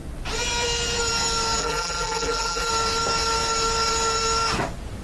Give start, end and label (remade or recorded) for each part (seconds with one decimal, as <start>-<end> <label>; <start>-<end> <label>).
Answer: 0.0-1.6 recorded; 1.6-2.7 remade; 2.7-5.0 recorded